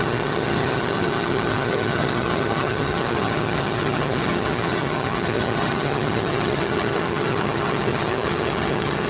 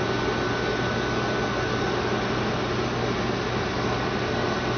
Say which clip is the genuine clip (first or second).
second